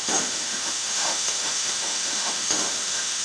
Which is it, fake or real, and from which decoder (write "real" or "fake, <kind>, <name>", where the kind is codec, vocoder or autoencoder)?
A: fake, autoencoder, DAC-VAE